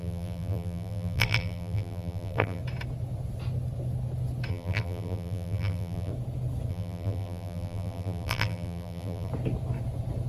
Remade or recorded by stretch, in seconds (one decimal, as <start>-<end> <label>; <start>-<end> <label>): 0.0-2.6 remade; 2.6-4.5 recorded; 4.5-6.1 remade; 6.1-6.7 recorded; 6.7-9.3 remade; 9.3-10.3 recorded